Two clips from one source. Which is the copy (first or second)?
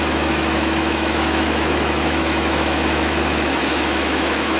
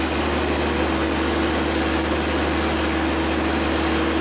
first